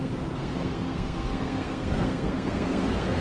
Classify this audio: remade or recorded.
remade